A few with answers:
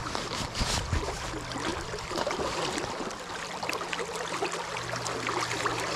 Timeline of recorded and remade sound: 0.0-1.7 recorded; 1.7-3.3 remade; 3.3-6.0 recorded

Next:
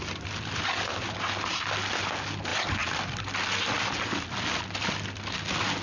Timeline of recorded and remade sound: 0.0-2.5 recorded; 2.5-4.6 remade; 4.6-5.8 recorded

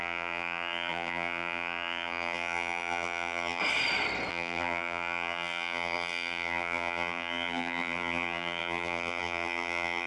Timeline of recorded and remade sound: 0.0-3.6 remade; 3.6-4.3 recorded; 4.3-10.1 remade

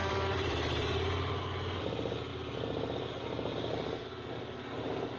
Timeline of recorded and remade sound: 0.0-1.4 remade; 1.4-2.3 recorded; 2.3-3.7 remade; 3.7-5.2 recorded